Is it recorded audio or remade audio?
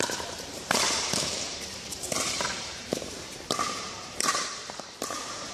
remade